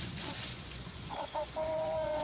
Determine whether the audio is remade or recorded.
remade